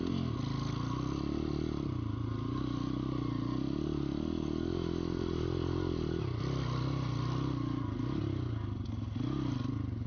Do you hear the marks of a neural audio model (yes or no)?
no